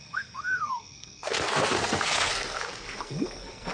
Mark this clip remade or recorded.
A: remade